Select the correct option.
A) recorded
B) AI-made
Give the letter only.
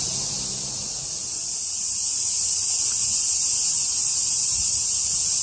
A